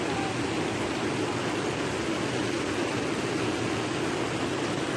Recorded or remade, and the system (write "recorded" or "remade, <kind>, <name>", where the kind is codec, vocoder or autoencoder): recorded